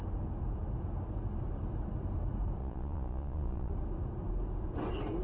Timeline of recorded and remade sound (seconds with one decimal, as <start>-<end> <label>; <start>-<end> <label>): 0.0-2.6 recorded; 2.6-3.7 remade; 3.7-5.2 recorded